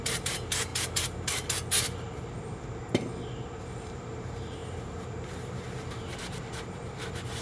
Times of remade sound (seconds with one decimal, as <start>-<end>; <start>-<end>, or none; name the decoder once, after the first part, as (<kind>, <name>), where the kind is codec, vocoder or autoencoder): 0.0-0.7 (vocoder, BigVGAN v2); 3.6-7.4